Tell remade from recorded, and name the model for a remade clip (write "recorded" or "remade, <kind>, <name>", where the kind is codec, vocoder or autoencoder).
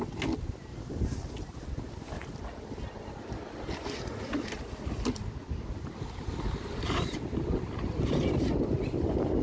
recorded